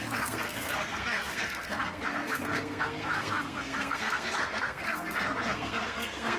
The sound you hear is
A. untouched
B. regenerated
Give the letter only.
B